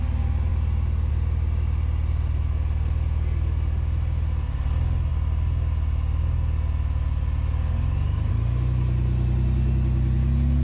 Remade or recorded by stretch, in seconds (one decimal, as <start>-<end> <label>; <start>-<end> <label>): 0.0-0.5 recorded; 0.5-1.1 remade; 1.1-10.6 recorded